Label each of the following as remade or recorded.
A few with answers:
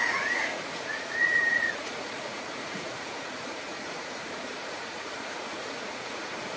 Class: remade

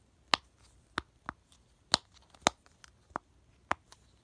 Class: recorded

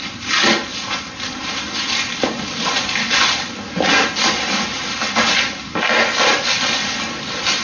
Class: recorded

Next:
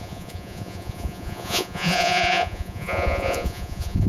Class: remade